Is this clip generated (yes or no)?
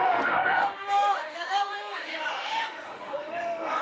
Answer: yes